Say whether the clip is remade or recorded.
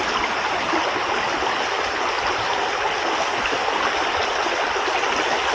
recorded